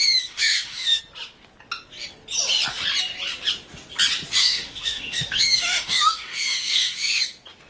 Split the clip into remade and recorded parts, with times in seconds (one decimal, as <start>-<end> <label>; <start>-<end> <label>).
0.0-1.0 remade; 1.0-4.4 recorded; 4.4-7.2 remade; 7.2-7.7 recorded